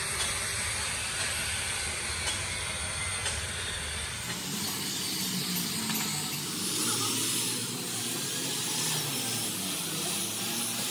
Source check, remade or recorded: recorded